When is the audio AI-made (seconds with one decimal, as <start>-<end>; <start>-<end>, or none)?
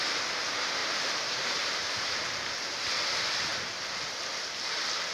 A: 0.8-2.7